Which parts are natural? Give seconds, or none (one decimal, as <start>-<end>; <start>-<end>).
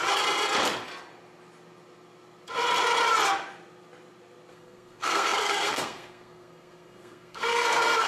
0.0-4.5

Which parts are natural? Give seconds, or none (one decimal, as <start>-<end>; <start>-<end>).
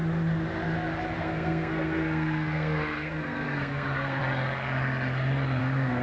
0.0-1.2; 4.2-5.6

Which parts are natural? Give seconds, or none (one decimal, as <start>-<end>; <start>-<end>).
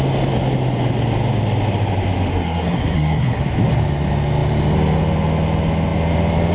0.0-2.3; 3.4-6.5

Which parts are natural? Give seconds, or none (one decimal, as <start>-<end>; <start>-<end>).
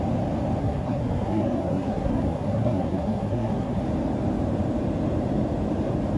0.0-0.6; 3.8-6.2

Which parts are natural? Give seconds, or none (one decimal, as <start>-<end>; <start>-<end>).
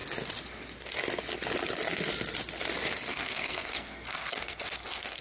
0.0-3.1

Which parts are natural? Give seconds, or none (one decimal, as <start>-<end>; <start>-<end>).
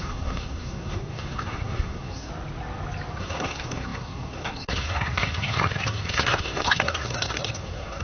2.3-3.2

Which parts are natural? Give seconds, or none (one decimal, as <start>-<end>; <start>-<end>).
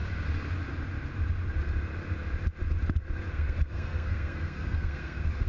0.0-3.3